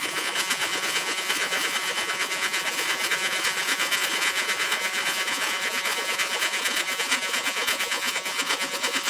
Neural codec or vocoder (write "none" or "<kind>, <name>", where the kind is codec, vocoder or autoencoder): vocoder, Vocos